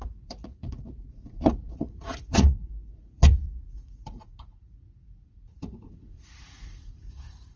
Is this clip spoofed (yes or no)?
yes